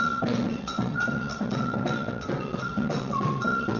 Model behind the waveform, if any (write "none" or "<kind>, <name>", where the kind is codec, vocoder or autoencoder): vocoder, WaveNeXt